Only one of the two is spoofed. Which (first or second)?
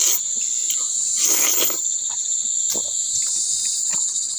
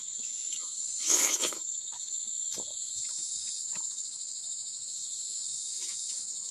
second